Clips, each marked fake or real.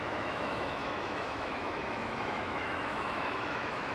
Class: fake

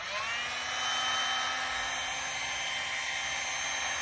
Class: real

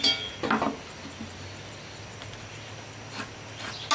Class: real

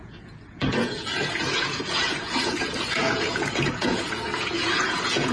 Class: fake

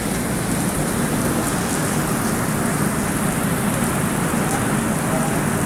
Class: real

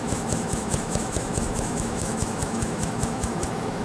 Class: fake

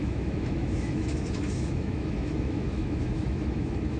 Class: fake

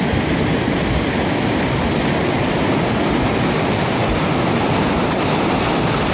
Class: real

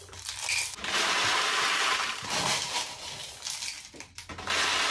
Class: real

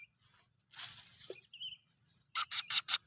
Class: real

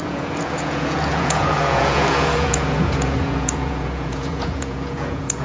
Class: fake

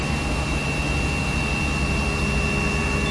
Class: real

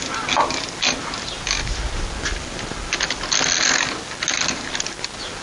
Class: real